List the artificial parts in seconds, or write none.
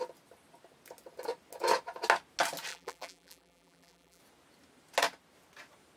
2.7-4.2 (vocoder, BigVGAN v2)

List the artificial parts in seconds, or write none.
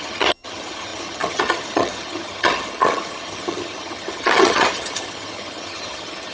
0.0-6.3 (vocoder, HiFi-GAN)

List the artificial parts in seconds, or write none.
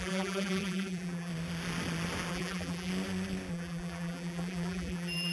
0.0-1.3 (vocoder, BigVGAN v2); 2.3-2.9; 3.5-5.3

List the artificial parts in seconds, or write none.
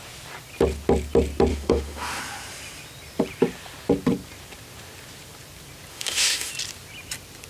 1.5-2.2 (autoencoder, DAC-VAE); 5.9-6.5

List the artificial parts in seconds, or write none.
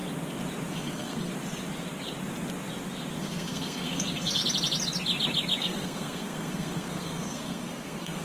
0.7-1.3 (codec, SNAC); 3.2-4.4; 5.6-8.2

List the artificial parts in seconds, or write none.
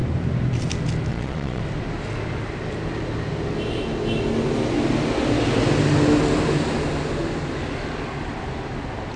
1.1-1.6 (vocoder, Vocos)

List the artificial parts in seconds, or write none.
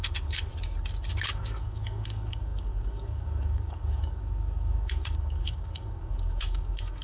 0.0-0.5 (codec, DAC); 1.1-7.0